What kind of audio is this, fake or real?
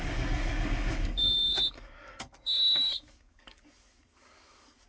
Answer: fake